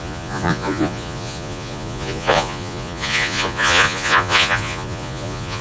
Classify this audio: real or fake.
fake